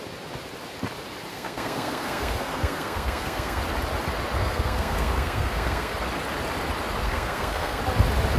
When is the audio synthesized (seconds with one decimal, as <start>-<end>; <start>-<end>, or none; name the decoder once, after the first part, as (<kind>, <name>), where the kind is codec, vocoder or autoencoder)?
1.3-3.6 (codec, SNAC); 4.4-5.9; 7.0-7.8